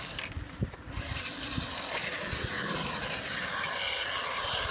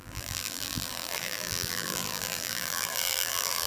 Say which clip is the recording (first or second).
first